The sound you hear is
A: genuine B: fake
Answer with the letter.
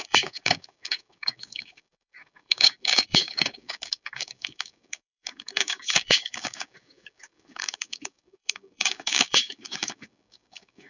B